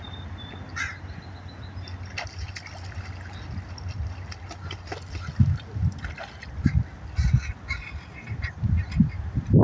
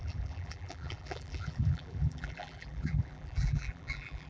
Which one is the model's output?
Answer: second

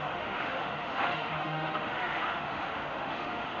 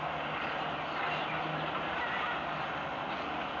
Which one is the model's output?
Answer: first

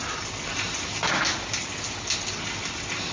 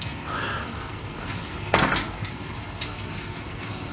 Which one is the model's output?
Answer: second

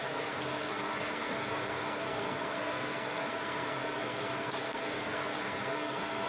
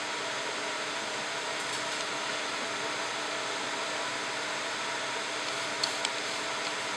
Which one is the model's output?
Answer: first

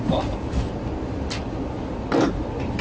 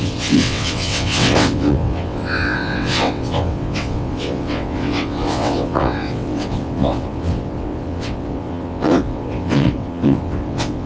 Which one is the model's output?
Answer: second